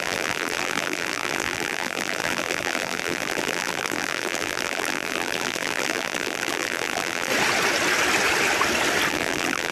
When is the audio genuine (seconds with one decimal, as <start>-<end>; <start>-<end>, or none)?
7.3-9.1